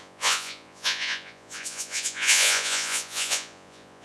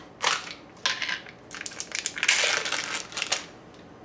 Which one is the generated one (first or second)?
first